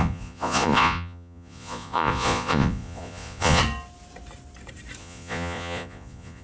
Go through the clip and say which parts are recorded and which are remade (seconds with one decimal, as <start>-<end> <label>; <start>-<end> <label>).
0.0-3.6 remade; 3.6-5.0 recorded; 5.0-6.4 remade